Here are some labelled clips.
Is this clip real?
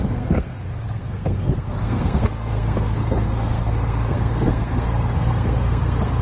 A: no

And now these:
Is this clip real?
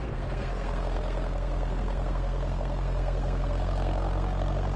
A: no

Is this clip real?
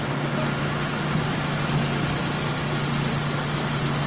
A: yes